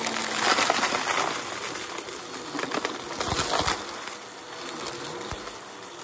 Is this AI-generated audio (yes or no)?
no